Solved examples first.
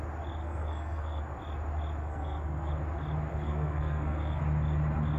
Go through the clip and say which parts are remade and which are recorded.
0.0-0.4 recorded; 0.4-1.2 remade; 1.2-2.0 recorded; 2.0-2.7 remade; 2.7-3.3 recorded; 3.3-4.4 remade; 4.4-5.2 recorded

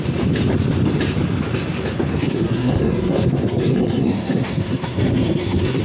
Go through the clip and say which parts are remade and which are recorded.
0.0-2.1 recorded; 2.1-5.8 remade

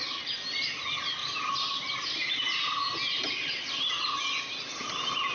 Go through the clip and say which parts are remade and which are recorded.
0.0-1.2 recorded; 1.2-4.4 remade; 4.4-5.3 recorded

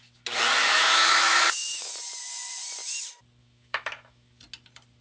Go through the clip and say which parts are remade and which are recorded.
0.0-0.6 recorded; 0.6-1.9 remade; 1.9-3.4 recorded; 3.4-4.4 remade; 4.4-5.0 recorded